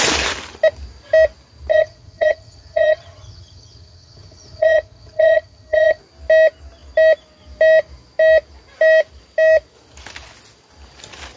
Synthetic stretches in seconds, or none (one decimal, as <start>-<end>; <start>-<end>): 1.7-6.0